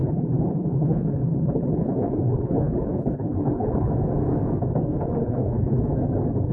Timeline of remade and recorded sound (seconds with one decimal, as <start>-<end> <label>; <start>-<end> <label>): 0.0-3.9 remade; 3.9-5.2 recorded; 5.2-5.8 remade; 5.8-6.5 recorded